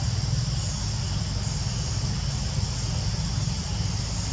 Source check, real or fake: real